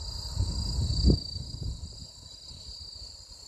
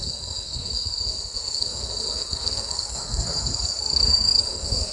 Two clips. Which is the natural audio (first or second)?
first